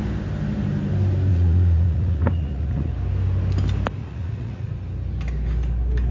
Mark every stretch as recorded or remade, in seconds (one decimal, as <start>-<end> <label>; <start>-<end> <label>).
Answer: 0.0-1.3 recorded; 1.3-2.9 remade; 2.9-4.0 recorded; 4.0-4.7 remade; 4.7-6.1 recorded